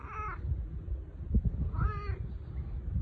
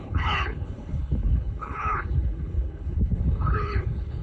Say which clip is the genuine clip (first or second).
first